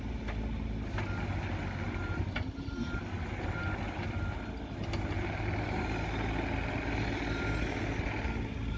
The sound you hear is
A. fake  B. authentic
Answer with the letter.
B